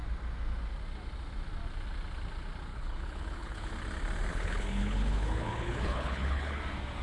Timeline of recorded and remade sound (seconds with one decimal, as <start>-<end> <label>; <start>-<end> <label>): 0.0-2.7 recorded; 2.7-3.7 remade; 3.7-4.3 recorded; 4.3-6.6 remade; 6.6-7.0 recorded